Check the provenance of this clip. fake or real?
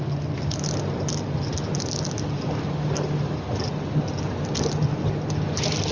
real